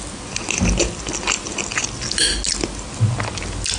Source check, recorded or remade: recorded